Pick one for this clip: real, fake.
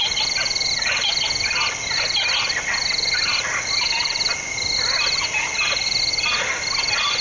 real